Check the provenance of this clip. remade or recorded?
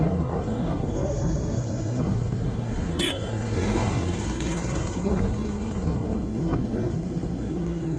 remade